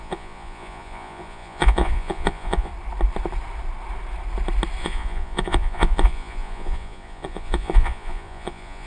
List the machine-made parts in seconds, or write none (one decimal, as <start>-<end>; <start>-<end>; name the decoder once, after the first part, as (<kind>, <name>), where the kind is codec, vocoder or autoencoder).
0.0-2.7 (vocoder, Vocos); 4.8-8.9